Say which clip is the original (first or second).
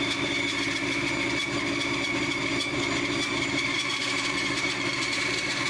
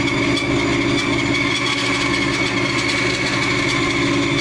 second